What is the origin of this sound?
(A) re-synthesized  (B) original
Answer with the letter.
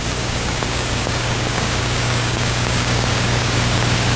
A